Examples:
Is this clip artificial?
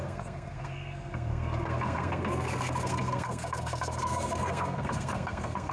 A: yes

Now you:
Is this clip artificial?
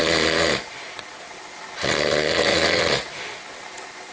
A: no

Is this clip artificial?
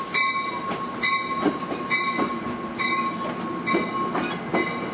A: no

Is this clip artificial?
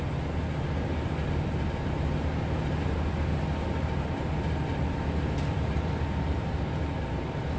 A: no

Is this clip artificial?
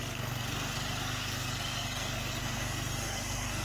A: yes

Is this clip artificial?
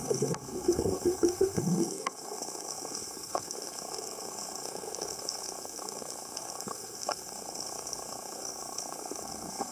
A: yes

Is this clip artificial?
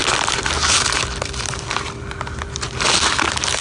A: no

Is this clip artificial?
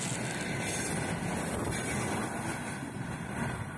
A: no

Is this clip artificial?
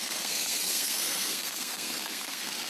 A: yes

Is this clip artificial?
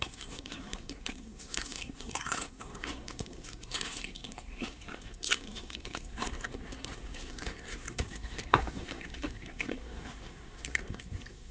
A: yes